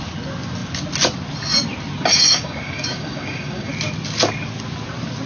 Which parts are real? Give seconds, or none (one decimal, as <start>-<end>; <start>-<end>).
0.0-2.1; 3.7-5.3